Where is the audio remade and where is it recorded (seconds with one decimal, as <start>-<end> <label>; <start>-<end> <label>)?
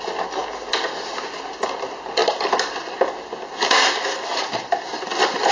0.0-2.2 recorded; 2.2-5.5 remade